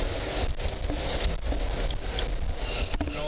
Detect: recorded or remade recorded